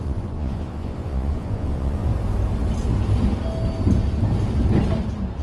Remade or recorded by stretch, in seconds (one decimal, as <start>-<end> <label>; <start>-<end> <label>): 0.0-2.1 remade; 2.1-5.4 recorded